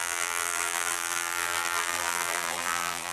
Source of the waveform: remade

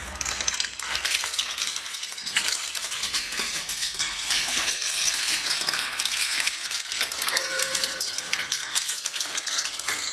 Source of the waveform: remade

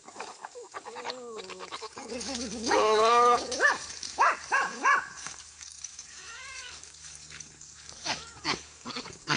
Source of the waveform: remade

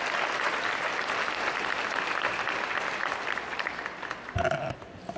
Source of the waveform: recorded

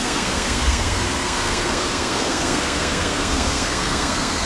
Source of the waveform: remade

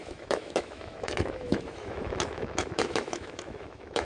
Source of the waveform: remade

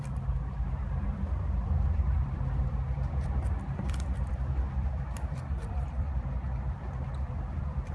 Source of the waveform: remade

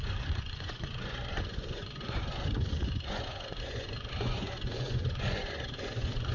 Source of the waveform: remade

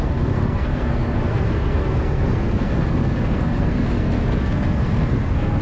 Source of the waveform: remade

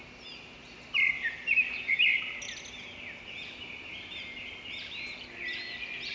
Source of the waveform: recorded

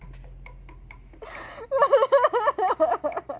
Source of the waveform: recorded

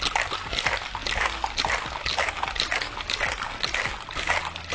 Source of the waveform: recorded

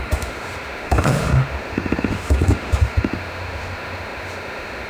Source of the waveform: remade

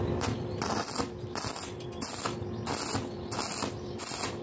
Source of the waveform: recorded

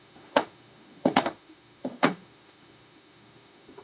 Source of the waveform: remade